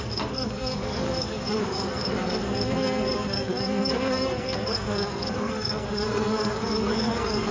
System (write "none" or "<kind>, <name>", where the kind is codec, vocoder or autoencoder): codec, SNAC